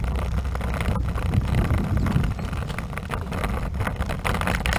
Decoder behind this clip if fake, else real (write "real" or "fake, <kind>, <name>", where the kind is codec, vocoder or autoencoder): real